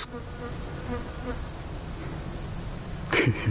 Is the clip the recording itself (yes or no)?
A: yes